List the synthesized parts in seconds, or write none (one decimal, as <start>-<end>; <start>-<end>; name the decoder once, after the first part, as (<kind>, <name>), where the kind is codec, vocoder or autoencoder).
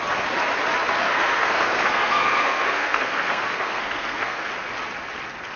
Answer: 1.1-4.5 (codec, SNAC)